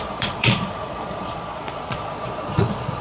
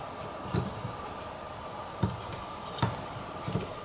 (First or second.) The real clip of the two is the second